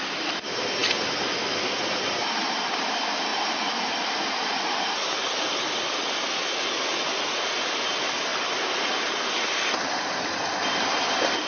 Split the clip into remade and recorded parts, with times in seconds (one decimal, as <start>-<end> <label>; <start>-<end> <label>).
0.0-11.5 recorded